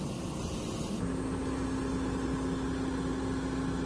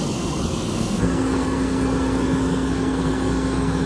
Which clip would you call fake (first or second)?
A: second